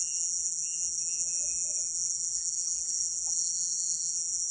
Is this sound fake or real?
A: fake